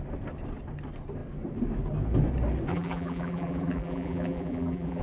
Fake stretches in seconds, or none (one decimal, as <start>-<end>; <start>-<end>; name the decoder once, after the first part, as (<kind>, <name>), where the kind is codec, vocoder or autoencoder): 2.7-5.0 (vocoder, BigVGAN v2)